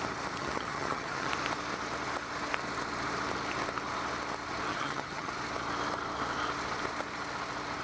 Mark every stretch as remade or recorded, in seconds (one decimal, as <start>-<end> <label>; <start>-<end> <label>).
0.0-0.4 recorded; 0.4-1.3 remade; 1.3-4.7 recorded; 4.7-5.3 remade; 5.3-7.8 recorded